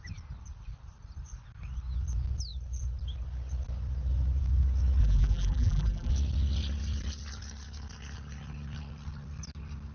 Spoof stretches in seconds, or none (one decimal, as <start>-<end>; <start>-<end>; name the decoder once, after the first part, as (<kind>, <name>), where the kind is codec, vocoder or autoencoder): 5.0-6.1 (vocoder, BigVGAN v2)